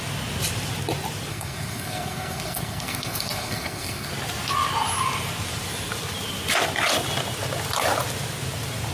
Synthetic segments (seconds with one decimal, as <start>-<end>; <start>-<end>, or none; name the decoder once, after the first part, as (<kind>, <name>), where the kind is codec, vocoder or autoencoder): 1.3-4.1 (codec, SNAC)

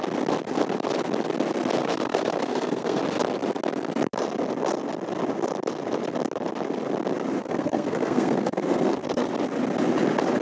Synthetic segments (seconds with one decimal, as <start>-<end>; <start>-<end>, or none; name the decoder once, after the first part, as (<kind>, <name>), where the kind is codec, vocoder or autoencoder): 1.8-3.0 (codec, SNAC); 7.4-9.3

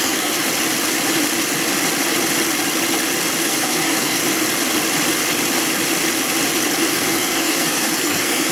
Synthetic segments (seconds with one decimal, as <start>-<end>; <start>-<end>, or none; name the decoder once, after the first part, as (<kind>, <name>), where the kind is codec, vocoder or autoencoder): 0.0-0.4 (codec, SNAC); 3.4-4.2; 6.9-8.5

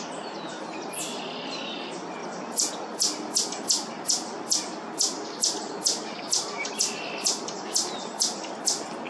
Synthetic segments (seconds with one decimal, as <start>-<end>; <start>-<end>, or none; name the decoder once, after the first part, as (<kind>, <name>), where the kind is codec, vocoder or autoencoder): none

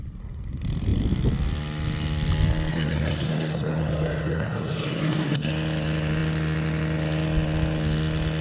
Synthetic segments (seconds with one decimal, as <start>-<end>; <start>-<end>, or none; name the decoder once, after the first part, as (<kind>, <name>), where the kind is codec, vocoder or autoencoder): 2.7-5.5 (codec, SNAC)